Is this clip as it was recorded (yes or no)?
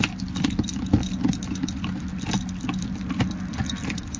yes